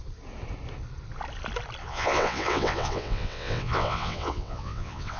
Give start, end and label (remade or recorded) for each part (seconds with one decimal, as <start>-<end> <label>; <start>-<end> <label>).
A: 0.0-1.8 recorded; 1.8-5.2 remade